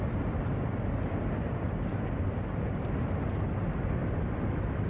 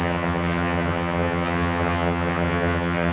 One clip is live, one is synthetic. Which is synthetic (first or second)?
second